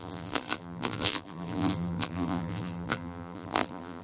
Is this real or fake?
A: fake